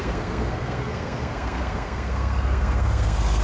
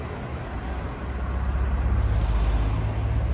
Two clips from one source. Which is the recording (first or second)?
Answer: second